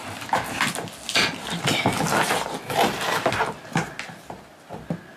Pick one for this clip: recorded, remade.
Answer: recorded